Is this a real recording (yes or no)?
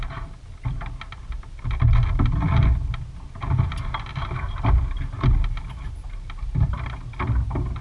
yes